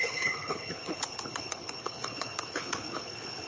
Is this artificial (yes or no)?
yes